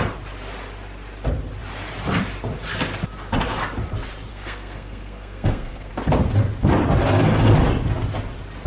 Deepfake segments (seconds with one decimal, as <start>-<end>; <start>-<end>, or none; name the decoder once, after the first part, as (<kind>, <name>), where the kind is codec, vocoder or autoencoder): 4.3-5.9 (codec, SNAC)